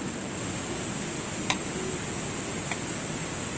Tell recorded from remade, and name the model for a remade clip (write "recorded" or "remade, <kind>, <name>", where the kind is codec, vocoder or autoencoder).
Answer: recorded